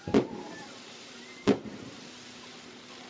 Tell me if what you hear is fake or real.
real